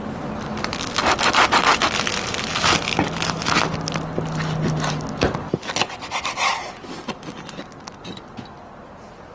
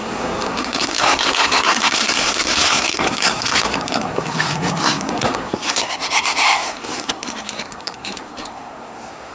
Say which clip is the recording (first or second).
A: first